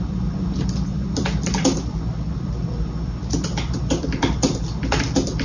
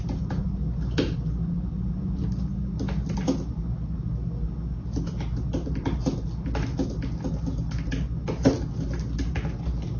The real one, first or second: second